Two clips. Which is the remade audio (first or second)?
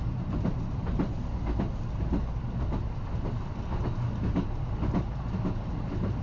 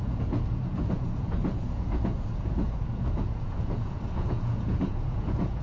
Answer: second